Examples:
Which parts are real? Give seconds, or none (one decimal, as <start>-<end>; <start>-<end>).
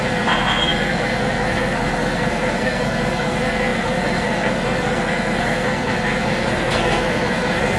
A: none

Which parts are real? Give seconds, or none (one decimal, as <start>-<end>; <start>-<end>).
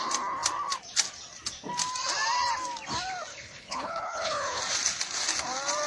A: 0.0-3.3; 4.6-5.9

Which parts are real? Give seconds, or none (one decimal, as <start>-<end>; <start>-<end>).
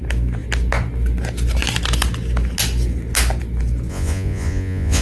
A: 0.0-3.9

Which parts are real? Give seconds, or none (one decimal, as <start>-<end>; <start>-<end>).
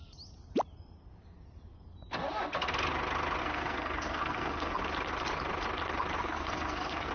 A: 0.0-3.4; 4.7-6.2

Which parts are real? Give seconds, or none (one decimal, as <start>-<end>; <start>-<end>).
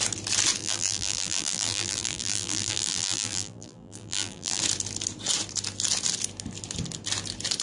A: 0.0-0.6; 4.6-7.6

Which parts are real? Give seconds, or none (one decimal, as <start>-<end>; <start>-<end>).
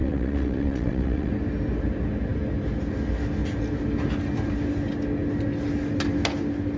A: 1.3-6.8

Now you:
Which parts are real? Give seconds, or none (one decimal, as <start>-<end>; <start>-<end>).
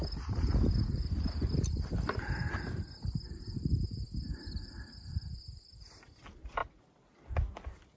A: 0.0-8.0